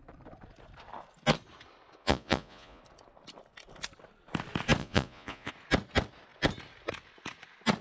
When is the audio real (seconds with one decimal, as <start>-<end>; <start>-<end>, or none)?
0.0-2.0; 2.8-4.8; 5.5-7.8